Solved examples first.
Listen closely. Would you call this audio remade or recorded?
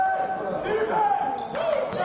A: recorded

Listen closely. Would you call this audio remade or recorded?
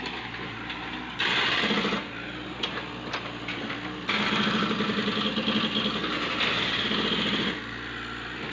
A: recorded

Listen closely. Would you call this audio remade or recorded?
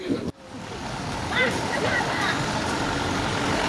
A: remade